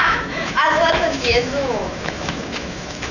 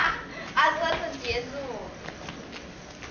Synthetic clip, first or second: first